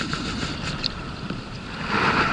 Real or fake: fake